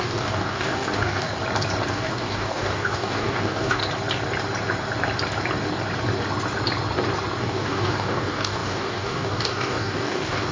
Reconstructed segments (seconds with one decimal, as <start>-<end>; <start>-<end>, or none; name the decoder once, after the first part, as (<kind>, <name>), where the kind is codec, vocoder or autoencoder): 0.0-1.3 (codec, DAC); 1.9-3.8; 7.4-10.5